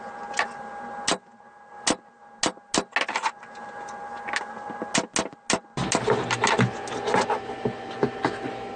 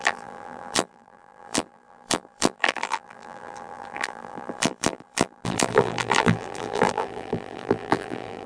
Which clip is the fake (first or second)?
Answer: second